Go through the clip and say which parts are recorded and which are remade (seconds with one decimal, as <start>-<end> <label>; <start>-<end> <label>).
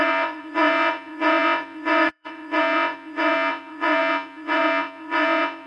0.0-5.7 remade